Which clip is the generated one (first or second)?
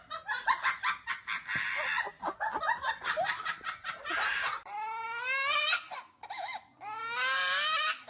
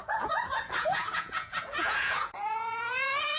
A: second